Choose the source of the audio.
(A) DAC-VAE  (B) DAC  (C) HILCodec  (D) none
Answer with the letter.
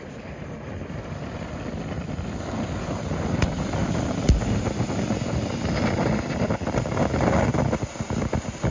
D